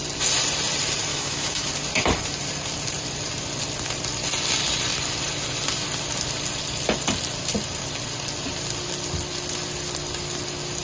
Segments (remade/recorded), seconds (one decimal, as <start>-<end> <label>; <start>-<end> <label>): 0.0-1.1 recorded; 1.1-1.7 remade; 1.7-10.8 recorded